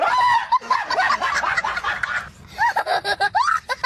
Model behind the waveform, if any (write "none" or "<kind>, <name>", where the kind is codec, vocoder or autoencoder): none